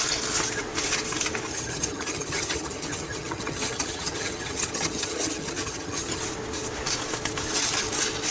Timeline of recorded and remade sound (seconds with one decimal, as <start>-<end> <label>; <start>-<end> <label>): 0.0-1.5 recorded; 1.5-6.2 remade; 6.2-8.3 recorded